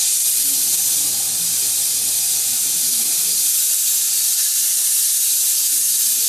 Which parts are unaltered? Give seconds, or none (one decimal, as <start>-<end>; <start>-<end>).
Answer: 0.0-6.3